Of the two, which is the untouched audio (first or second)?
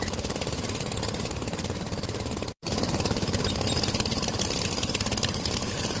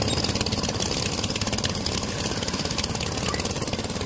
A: second